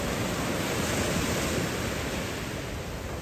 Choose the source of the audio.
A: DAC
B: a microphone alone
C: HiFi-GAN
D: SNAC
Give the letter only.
B